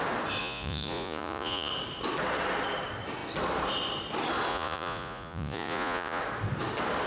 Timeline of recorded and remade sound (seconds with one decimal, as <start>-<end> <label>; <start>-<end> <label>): 0.0-0.4 recorded; 0.4-1.7 remade; 1.7-4.5 recorded; 4.5-6.2 remade; 6.2-7.1 recorded